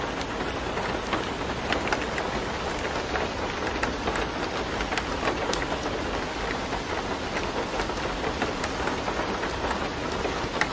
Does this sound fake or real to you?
real